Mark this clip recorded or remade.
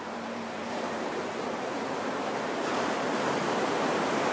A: remade